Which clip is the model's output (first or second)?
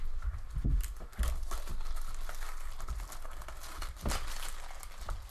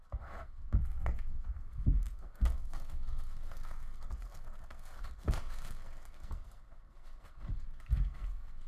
second